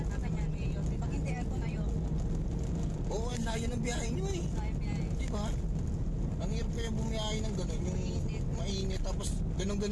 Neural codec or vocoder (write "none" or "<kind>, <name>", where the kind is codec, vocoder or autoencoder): none